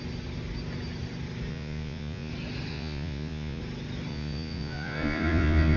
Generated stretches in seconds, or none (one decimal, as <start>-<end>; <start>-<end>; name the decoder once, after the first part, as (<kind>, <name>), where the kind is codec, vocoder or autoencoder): 1.5-2.3 (vocoder, Vocos); 2.7-3.6; 4.1-5.8